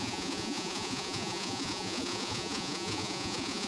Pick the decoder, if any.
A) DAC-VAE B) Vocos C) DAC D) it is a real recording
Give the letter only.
B